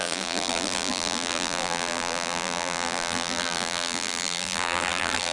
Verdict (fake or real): fake